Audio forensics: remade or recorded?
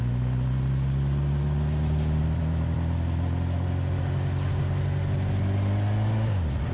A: recorded